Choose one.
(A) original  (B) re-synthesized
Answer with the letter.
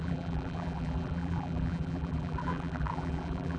B